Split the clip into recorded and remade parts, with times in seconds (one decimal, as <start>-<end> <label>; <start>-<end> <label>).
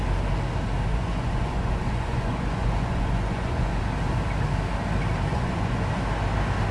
0.0-0.9 recorded; 0.9-3.8 remade; 3.8-5.3 recorded; 5.3-5.8 remade; 5.8-6.7 recorded